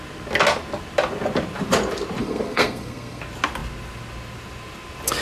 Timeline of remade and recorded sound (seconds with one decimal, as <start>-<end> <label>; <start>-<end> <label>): 0.0-2.2 recorded; 2.2-3.2 remade; 3.2-5.2 recorded